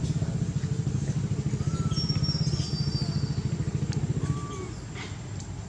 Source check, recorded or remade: recorded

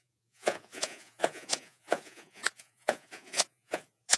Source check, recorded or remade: remade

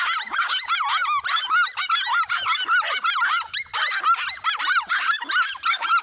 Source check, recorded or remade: recorded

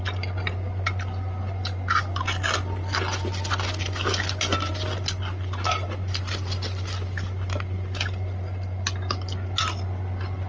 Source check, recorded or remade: recorded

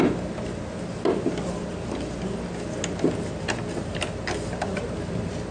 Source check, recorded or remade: recorded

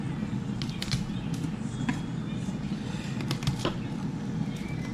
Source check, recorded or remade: recorded